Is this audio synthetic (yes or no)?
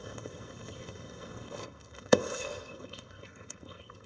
yes